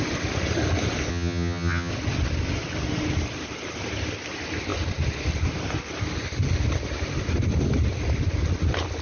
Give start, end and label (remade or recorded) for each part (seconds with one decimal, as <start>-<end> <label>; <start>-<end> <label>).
0.0-1.1 recorded; 1.1-1.9 remade; 1.9-9.0 recorded